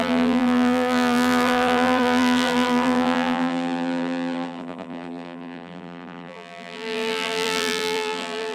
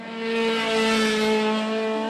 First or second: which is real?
second